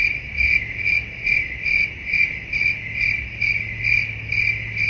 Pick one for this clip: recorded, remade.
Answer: recorded